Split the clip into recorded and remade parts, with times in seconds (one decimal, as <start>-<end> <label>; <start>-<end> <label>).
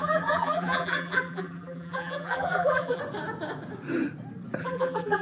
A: 0.0-3.0 remade; 3.0-4.6 recorded; 4.6-5.2 remade